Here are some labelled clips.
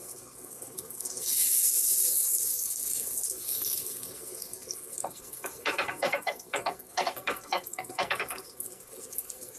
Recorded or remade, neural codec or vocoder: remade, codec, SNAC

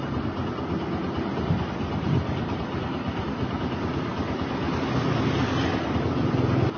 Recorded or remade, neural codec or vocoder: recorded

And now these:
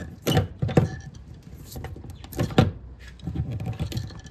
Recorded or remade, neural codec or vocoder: recorded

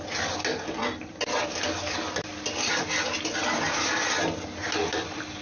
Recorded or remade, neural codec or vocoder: recorded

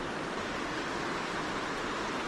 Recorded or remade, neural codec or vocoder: recorded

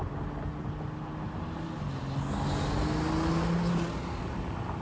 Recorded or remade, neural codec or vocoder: recorded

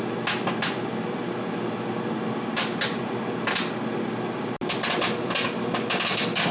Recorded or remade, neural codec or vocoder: recorded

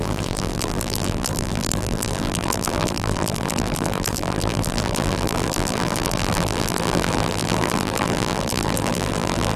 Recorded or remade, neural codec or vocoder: remade, vocoder, BigVGAN v2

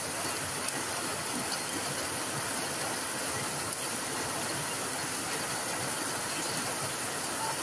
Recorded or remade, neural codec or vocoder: recorded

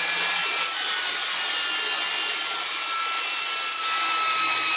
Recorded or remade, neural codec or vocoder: recorded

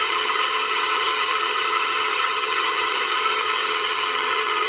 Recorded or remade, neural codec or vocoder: remade, vocoder, HiFi-GAN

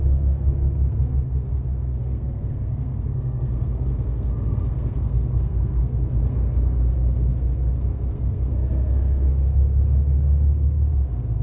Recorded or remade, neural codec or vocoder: remade, codec, SNAC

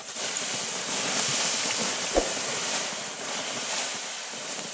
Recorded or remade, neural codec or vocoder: remade, vocoder, BigVGAN v2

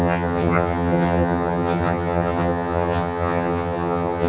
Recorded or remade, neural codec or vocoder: remade, vocoder, HiFi-GAN